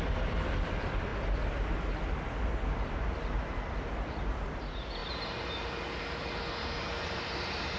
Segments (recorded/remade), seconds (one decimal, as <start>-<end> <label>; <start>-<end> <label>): 0.0-1.1 remade; 1.1-4.5 recorded; 4.5-5.0 remade; 5.0-6.9 recorded; 6.9-7.8 remade